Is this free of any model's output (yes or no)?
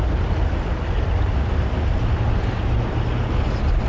yes